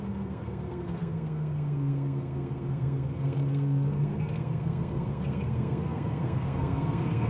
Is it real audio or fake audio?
fake